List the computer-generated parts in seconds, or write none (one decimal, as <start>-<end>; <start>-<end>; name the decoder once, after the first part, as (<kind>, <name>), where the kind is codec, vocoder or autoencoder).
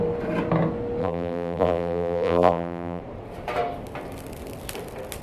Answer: 1.0-3.0 (vocoder, BigVGAN v2)